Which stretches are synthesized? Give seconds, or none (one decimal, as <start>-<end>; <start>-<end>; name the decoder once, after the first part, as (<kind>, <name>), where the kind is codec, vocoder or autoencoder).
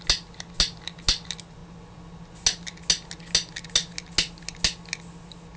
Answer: none